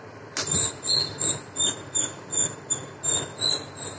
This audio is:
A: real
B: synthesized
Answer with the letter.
A